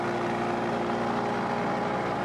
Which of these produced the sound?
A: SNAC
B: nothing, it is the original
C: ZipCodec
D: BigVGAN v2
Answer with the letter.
B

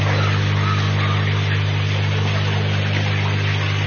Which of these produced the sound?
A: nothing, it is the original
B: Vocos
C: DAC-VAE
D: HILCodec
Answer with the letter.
A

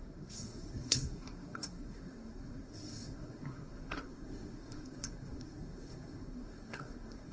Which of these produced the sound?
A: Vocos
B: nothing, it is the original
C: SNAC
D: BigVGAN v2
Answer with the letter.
C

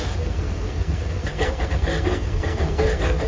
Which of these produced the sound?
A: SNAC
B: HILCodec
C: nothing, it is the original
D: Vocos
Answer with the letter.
A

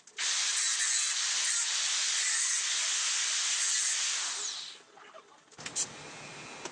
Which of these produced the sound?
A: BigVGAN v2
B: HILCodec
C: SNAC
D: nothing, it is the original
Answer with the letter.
D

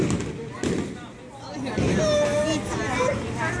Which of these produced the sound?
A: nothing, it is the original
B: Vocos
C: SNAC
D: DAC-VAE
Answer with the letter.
A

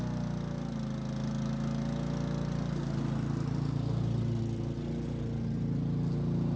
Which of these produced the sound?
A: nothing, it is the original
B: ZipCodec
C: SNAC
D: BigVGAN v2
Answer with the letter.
A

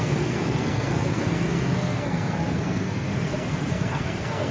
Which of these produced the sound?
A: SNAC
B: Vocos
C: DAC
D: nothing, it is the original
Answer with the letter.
A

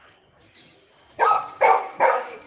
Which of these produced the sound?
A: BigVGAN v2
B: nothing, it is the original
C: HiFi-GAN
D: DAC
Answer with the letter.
D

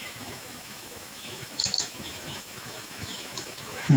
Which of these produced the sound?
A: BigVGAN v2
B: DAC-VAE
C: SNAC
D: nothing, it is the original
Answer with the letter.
B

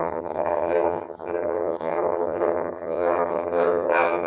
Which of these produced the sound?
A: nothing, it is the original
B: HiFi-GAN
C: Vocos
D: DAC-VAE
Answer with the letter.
B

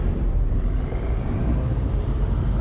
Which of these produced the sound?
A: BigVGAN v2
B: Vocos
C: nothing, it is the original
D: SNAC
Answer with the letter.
A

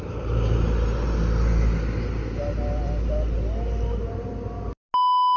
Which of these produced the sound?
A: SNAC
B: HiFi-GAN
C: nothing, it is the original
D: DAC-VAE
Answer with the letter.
C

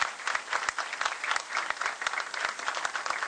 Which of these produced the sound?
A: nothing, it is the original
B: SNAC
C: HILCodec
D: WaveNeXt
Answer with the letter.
A